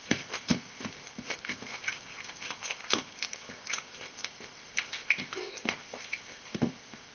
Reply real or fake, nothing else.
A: fake